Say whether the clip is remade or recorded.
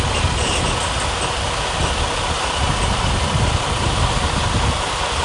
recorded